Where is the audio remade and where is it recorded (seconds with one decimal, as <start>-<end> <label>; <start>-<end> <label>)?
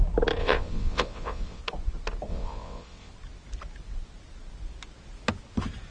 0.0-0.4 recorded; 0.4-1.6 remade; 1.6-2.3 recorded; 2.3-3.1 remade; 3.1-5.9 recorded